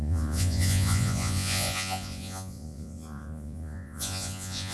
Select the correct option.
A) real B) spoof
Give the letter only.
B